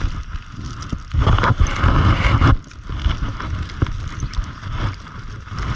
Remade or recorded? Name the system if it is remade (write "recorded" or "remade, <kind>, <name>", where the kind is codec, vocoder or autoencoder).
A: recorded